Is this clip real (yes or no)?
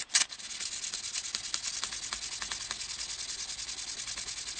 yes